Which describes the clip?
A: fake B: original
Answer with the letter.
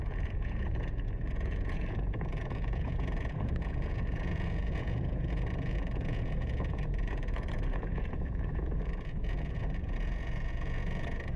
A